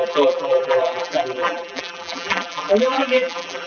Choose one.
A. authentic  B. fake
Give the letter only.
B